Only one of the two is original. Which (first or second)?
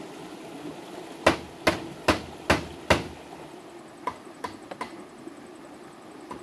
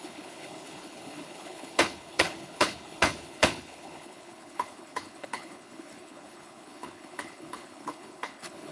first